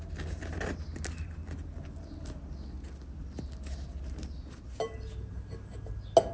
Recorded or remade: recorded